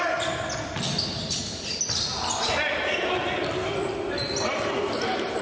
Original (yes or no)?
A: yes